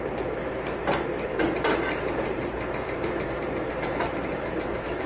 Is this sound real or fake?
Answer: fake